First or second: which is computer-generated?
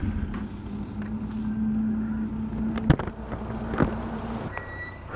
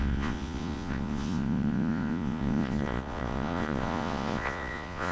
second